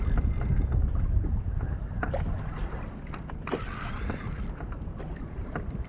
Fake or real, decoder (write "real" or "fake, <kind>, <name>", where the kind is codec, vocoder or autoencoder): real